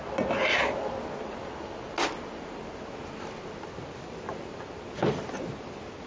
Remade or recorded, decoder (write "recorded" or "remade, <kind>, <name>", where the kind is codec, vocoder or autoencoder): recorded